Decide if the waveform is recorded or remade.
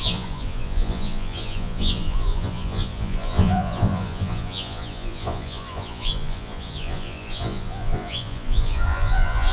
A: remade